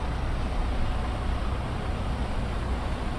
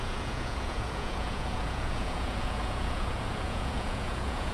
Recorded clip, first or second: first